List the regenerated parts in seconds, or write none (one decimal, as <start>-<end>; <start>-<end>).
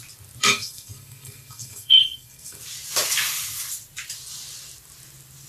0.4-2.6